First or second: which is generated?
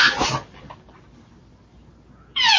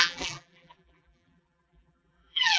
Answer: second